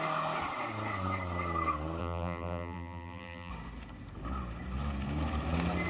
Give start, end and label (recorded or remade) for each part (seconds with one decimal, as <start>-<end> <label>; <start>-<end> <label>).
0.0-2.0 recorded; 2.0-3.5 remade; 3.5-5.9 recorded